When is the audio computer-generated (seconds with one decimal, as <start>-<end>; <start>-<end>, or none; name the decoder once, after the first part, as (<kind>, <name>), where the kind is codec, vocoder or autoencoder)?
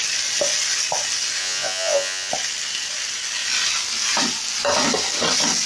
1.4-2.3 (vocoder, Vocos)